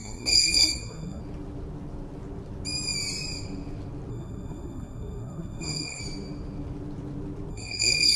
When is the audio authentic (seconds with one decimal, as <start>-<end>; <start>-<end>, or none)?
1.2-4.1; 6.0-7.5